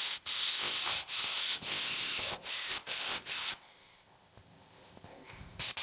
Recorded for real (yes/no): no